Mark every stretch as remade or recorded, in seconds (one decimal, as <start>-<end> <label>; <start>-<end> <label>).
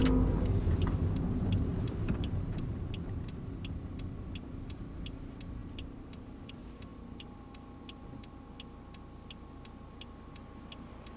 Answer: 0.0-1.7 recorded; 1.7-2.6 remade; 2.6-5.6 recorded; 5.6-6.5 remade; 6.5-6.9 recorded; 6.9-7.8 remade; 7.8-11.2 recorded